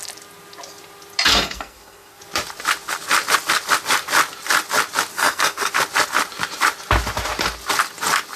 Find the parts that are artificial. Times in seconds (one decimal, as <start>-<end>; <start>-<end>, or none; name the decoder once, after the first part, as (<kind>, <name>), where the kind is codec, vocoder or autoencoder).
1.3-2.2 (codec, SNAC); 5.1-5.7